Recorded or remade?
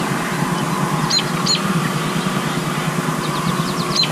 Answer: recorded